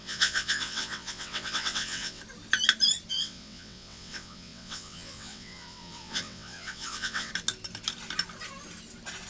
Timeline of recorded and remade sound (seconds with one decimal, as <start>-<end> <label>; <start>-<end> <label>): 0.0-2.2 remade; 2.2-3.1 recorded; 3.1-7.3 remade; 7.3-9.3 recorded